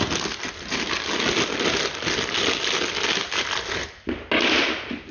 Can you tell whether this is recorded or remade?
recorded